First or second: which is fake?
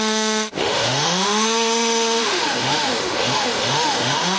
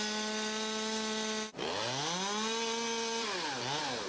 first